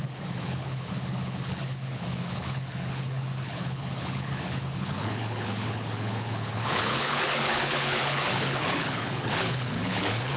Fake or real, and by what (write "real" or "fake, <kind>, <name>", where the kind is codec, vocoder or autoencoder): fake, codec, HILCodec